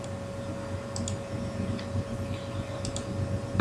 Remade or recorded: recorded